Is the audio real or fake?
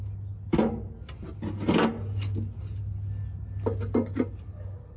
real